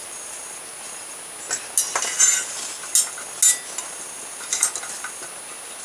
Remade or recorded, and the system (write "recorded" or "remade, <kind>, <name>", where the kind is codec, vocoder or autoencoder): recorded